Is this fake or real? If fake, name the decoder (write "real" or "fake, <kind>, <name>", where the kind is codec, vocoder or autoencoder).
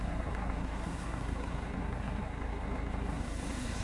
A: fake, codec, SNAC